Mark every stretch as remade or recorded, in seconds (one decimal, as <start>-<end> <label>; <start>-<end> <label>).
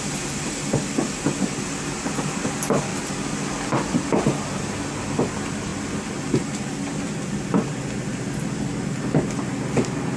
0.0-10.2 recorded